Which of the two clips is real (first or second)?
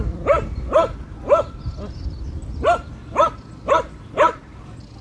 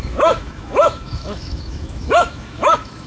first